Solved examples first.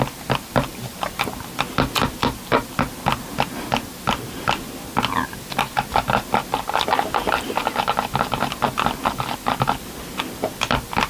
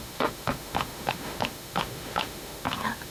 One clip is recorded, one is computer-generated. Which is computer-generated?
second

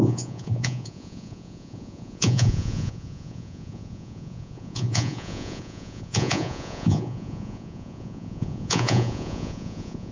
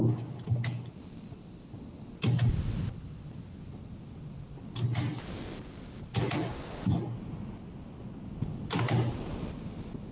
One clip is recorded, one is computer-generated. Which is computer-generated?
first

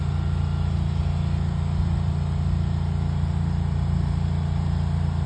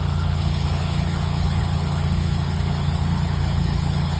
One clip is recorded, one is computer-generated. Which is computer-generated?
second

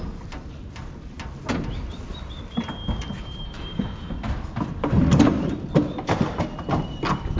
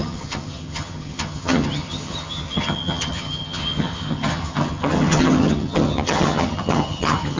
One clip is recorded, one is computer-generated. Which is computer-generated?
second